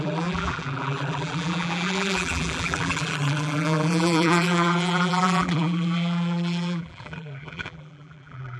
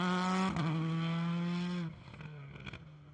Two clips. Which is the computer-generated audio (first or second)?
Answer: first